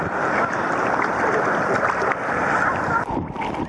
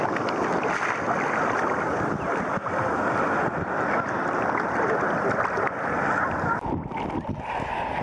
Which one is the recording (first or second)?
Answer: second